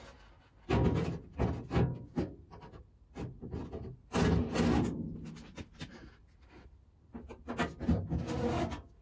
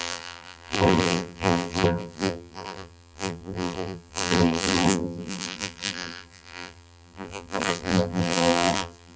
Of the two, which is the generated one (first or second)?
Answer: second